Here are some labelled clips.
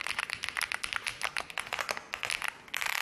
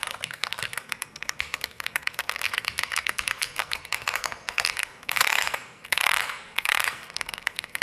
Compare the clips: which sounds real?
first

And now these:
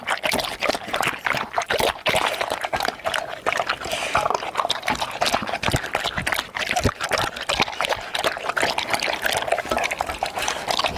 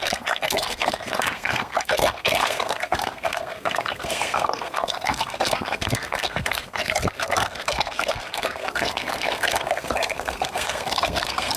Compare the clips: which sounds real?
first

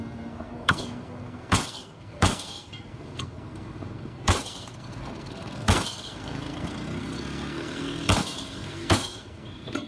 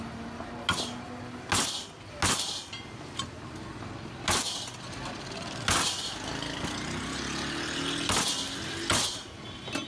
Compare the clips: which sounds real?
second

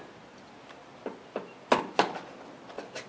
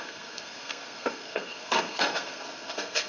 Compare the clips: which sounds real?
first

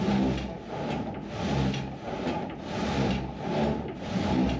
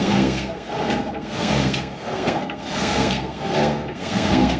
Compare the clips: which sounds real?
first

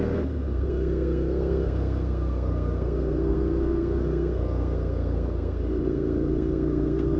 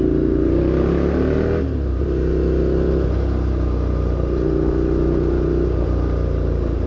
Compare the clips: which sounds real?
second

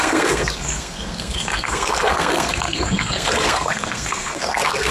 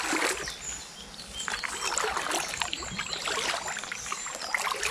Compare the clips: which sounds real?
second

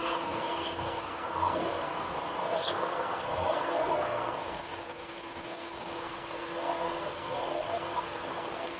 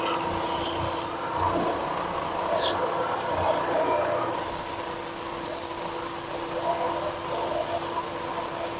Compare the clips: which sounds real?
second